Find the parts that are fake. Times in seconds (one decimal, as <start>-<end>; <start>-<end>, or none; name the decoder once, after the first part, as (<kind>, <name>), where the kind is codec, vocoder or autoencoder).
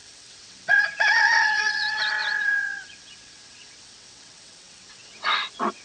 0.0-5.8 (vocoder, WaveNeXt)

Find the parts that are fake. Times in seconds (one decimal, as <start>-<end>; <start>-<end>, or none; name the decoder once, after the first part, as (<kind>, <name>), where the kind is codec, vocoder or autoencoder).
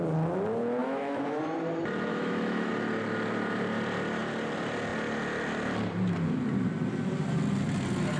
0.8-1.4 (autoencoder, DAC-VAE); 2.1-2.7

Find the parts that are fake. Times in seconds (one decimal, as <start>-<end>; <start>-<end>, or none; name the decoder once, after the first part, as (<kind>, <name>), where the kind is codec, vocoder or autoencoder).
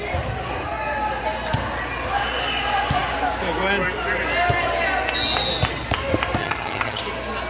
6.4-7.0 (vocoder, HiFi-GAN)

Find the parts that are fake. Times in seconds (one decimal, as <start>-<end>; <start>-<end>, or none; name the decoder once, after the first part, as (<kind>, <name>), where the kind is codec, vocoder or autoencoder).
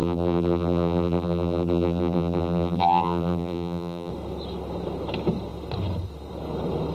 0.0-4.1 (vocoder, BigVGAN v2)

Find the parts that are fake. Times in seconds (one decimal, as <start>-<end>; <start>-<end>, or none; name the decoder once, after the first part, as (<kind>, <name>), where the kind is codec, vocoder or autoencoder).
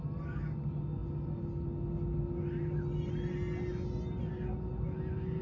none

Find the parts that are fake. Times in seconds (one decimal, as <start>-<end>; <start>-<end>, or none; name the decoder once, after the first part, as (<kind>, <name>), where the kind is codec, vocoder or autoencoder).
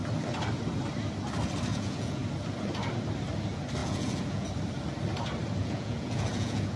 1.7-2.2 (vocoder, Vocos); 3.8-4.5; 5.6-6.8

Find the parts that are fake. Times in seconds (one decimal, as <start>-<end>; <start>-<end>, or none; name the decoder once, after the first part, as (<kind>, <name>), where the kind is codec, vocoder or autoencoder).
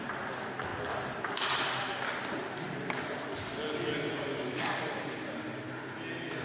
none